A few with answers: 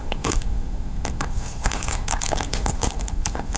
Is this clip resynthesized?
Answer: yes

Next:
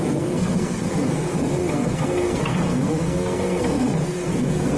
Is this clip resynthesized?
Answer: yes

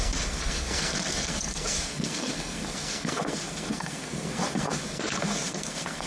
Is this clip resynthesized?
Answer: yes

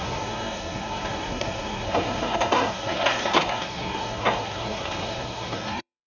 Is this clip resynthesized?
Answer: yes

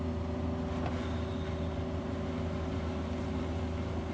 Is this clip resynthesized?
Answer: no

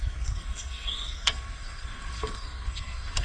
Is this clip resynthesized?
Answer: yes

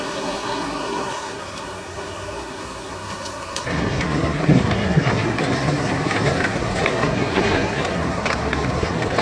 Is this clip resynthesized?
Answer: yes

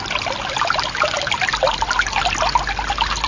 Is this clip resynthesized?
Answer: no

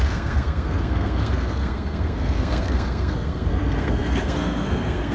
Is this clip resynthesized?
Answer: yes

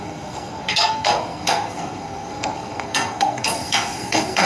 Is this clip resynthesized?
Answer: yes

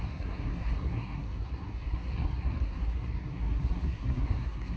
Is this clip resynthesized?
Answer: yes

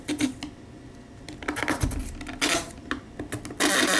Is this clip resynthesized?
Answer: no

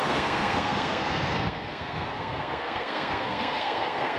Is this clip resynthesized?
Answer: yes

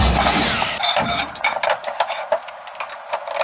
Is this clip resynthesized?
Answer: no